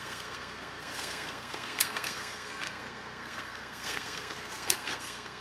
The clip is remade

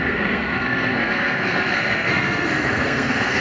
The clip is remade